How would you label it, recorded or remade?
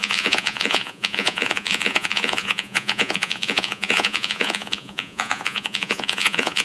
remade